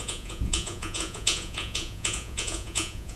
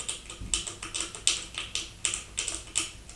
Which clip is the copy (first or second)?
first